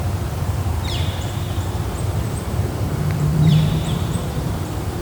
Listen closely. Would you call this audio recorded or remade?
remade